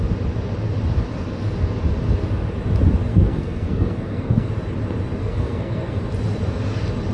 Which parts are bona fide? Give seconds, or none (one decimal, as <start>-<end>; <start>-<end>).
0.0-3.1; 4.5-5.2; 6.0-7.1